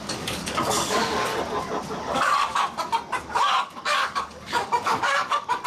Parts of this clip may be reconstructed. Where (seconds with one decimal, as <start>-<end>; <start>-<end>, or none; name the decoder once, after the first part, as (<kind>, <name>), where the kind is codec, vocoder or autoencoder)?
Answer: 0.0-1.3 (codec, DAC); 2.0-2.6; 3.2-5.7